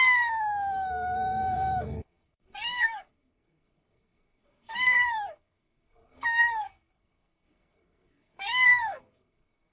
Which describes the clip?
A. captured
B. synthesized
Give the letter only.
B